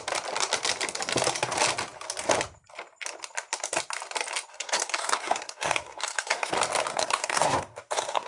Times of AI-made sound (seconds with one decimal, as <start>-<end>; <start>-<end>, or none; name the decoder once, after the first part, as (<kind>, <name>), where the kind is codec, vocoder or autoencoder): 4.5-6.5 (codec, SNAC); 6.9-8.3